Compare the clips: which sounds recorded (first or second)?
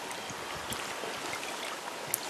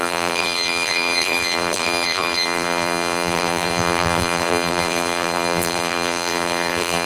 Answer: first